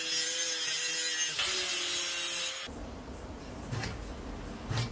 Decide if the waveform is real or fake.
real